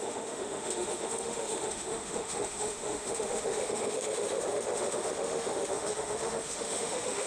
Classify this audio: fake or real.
fake